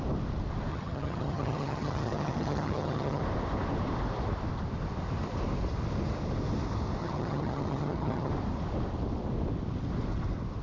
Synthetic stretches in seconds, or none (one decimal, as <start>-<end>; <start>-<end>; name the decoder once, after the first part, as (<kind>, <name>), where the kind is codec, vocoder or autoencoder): 0.7-3.2 (vocoder, HiFi-GAN); 7.0-8.3